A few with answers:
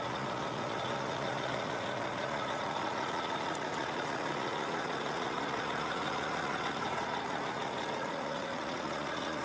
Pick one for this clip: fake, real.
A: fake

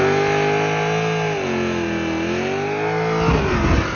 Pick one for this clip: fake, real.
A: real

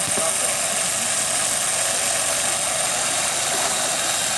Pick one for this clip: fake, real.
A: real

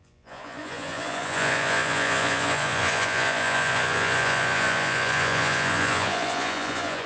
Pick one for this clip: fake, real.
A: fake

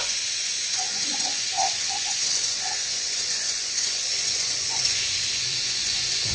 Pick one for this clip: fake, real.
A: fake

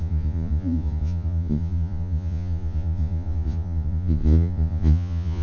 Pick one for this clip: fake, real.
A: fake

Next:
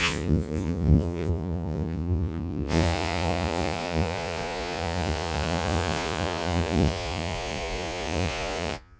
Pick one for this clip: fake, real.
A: fake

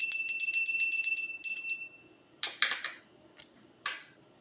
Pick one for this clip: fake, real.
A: real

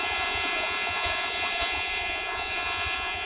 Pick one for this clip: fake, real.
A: fake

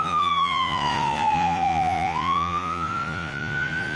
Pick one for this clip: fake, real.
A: fake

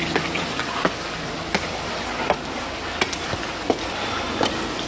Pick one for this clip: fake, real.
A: real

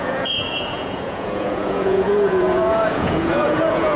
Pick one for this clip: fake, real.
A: fake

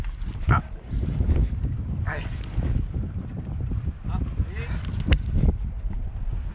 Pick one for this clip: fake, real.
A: real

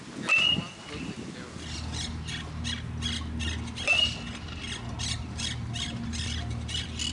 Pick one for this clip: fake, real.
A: real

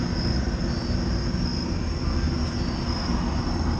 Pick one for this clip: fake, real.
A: real